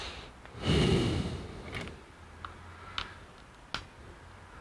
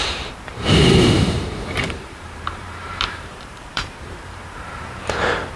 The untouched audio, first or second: first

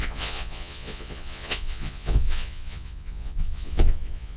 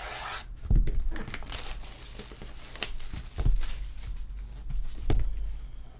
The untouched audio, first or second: second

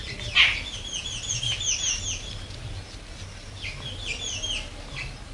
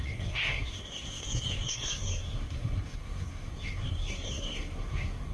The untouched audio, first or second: first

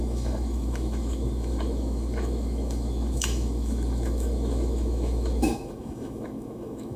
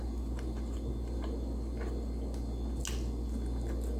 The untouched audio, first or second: second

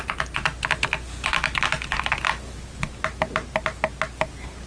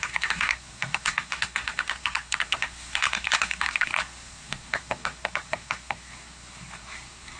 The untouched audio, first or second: first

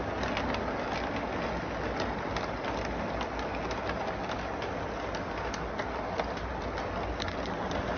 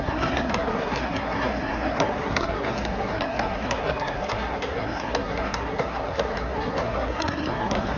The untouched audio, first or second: first